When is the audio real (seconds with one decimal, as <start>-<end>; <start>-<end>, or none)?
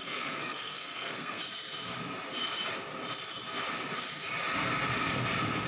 1.4-5.7